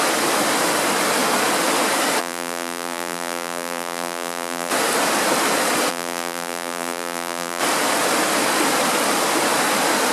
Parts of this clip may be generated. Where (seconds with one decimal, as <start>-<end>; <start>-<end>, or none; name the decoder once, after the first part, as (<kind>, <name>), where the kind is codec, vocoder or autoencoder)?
2.2-4.7 (vocoder, BigVGAN v2); 5.9-7.6